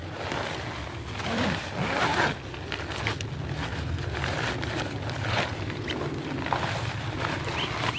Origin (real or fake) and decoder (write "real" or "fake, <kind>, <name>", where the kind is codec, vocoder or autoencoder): real